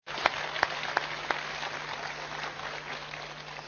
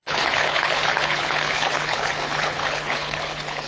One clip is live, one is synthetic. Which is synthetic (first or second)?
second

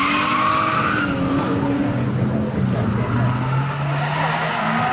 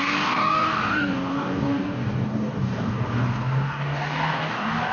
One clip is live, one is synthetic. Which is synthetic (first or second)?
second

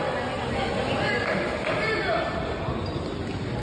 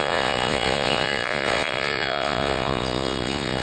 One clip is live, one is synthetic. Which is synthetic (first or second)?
second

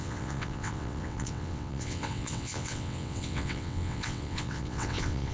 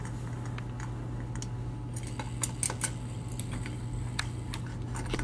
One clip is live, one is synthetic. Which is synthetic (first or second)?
first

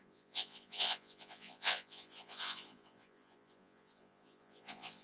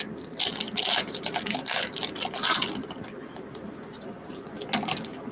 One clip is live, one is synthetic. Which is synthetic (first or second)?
first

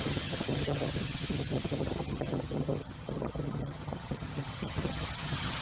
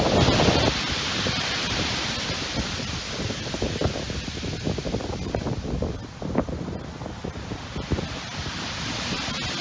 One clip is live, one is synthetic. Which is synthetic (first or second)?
first